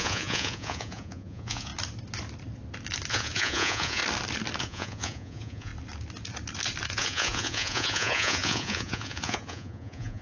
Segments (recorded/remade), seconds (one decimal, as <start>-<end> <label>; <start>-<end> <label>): 0.0-1.7 remade; 1.7-3.1 recorded; 3.1-4.0 remade; 4.0-4.6 recorded; 4.6-5.7 remade; 5.7-6.9 recorded; 6.9-10.2 remade